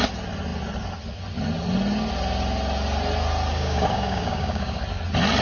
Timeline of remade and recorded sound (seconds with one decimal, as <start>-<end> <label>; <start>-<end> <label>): 0.0-3.5 recorded; 3.5-4.8 remade; 4.8-5.4 recorded

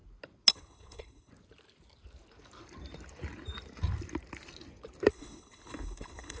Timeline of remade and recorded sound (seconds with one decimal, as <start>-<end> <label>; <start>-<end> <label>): 0.0-0.5 recorded; 0.5-1.3 remade; 1.3-5.1 recorded; 5.1-6.4 remade

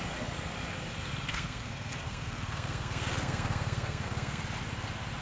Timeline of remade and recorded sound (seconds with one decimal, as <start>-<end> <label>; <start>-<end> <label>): 0.0-1.3 recorded; 1.3-4.4 remade; 4.4-5.2 recorded

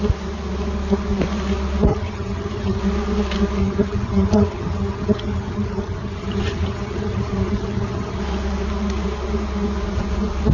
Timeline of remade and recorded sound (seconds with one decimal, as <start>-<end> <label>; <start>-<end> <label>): 0.0-1.9 recorded; 1.9-2.8 remade; 2.8-3.6 recorded; 3.6-8.2 remade; 8.2-10.5 recorded